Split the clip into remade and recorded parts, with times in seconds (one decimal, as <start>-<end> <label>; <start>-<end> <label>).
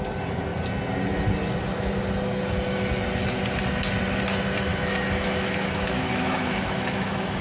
0.0-4.7 recorded; 4.7-7.4 remade